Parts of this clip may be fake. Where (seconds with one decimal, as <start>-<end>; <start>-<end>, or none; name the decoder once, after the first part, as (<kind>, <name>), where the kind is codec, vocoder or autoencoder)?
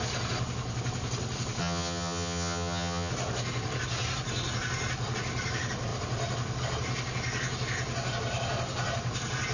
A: 1.6-3.1 (vocoder, HiFi-GAN)